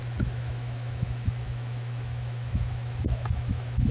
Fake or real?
fake